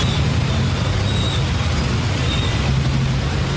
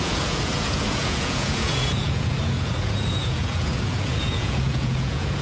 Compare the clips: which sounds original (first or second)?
first